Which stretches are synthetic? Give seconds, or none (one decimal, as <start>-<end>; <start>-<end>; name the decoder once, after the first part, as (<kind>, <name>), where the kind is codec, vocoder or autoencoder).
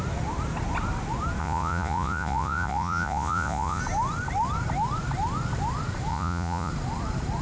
1.4-3.8 (vocoder, Vocos); 6.1-6.7